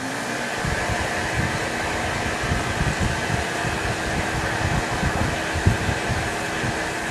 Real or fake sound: real